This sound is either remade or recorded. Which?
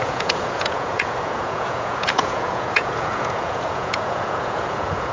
remade